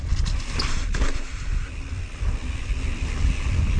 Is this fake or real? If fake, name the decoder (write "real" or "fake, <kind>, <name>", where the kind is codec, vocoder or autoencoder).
real